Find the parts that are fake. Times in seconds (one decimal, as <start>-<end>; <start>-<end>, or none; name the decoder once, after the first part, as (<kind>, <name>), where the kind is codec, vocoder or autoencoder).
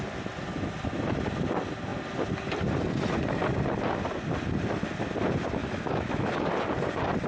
5.6-6.5 (autoencoder, DAC-VAE)